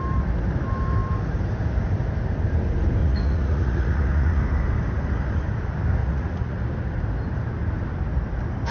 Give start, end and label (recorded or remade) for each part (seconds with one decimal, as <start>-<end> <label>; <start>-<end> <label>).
0.0-3.0 recorded; 3.0-4.4 remade; 4.4-6.0 recorded; 6.0-6.6 remade; 6.6-8.7 recorded